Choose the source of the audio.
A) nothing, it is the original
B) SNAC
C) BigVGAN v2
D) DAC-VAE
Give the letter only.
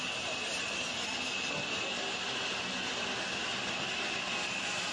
A